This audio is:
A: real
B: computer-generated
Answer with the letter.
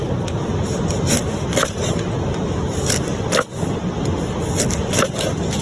A